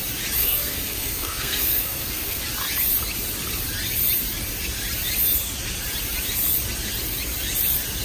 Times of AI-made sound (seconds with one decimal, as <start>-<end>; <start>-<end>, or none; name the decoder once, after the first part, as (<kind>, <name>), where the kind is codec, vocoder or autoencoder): 0.4-2.4 (codec, SNAC)